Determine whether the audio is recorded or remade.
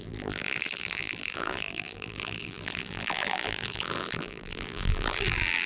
remade